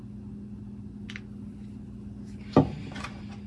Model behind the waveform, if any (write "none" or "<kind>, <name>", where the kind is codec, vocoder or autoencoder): none